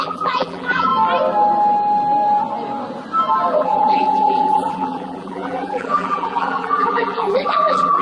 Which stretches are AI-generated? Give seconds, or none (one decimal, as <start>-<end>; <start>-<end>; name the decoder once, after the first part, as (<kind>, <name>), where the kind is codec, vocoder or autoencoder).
0.0-0.9 (vocoder, BigVGAN v2); 3.5-8.0